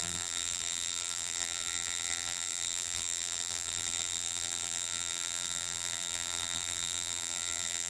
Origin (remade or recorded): remade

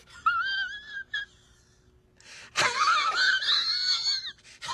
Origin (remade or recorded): recorded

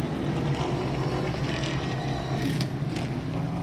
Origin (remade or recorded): recorded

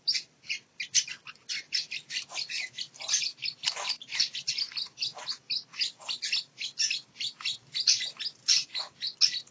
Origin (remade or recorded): recorded